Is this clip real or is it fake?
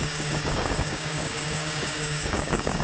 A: fake